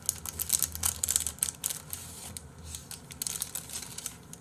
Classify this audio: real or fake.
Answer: real